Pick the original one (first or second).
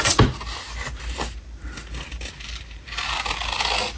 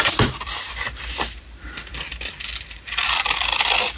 first